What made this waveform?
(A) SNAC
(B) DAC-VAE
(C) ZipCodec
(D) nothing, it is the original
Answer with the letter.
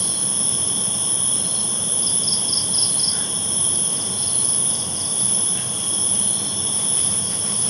D